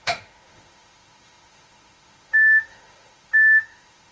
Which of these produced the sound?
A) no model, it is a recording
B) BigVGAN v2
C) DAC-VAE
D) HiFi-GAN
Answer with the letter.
C